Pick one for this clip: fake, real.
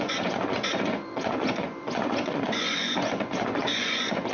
fake